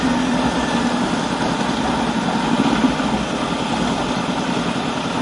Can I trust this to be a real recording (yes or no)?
yes